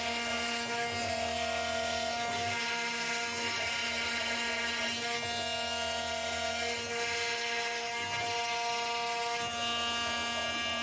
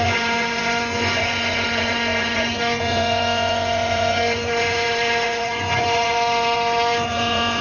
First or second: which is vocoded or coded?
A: second